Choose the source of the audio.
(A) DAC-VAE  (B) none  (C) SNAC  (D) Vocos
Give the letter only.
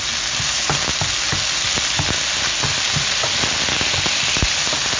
B